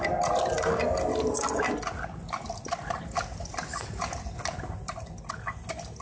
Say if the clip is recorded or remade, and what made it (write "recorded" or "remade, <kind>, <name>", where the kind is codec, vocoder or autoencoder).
recorded